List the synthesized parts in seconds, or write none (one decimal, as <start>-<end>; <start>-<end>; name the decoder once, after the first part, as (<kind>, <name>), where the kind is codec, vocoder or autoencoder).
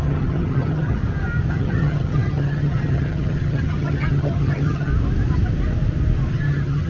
0.0-1.0 (vocoder, HiFi-GAN); 1.5-4.9; 6.3-6.9